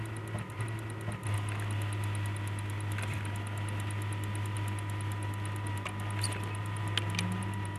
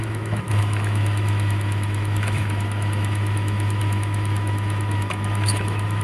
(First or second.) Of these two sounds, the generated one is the second